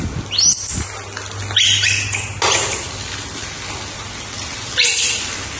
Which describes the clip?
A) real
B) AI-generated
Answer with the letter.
A